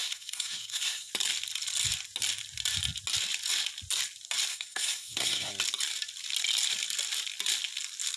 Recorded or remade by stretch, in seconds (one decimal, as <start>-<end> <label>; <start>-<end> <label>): 0.0-1.1 remade; 1.1-4.5 recorded; 4.5-5.5 remade; 5.5-8.2 recorded